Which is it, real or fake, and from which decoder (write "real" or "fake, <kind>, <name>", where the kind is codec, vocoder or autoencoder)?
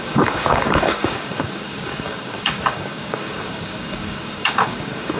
fake, codec, DAC